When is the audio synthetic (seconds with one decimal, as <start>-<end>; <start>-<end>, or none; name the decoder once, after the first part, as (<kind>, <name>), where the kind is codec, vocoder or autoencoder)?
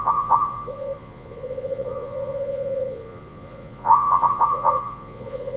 0.0-5.6 (vocoder, Vocos)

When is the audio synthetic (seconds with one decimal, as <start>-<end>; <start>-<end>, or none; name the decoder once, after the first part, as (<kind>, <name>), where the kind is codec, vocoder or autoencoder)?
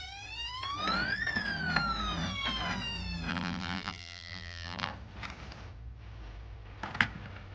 3.3-4.9 (vocoder, BigVGAN v2)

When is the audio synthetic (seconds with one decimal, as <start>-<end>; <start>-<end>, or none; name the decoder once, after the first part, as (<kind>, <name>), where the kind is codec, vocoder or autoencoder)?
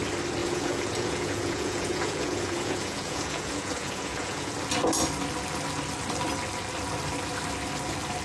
0.4-4.5 (vocoder, Vocos)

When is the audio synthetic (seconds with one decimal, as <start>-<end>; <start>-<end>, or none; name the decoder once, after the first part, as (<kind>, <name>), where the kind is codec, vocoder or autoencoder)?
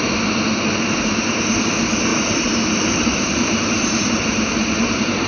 2.1-5.3 (vocoder, BigVGAN v2)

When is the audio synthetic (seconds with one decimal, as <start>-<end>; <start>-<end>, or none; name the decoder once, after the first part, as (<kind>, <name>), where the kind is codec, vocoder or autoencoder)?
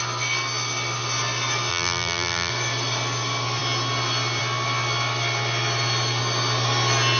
1.7-2.5 (vocoder, BigVGAN v2)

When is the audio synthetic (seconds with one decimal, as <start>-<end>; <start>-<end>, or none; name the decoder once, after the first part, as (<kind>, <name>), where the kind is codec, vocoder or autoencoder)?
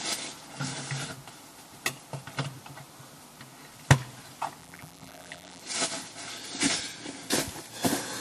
4.6-5.6 (vocoder, BigVGAN v2)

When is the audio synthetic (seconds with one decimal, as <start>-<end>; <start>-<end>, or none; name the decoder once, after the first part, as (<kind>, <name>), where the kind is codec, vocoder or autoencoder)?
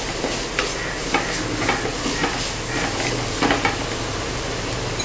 none